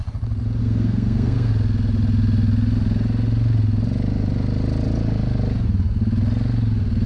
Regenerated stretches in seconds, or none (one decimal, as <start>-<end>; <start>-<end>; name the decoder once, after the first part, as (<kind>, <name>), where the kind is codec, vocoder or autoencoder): 0.6-1.5 (codec, SNAC)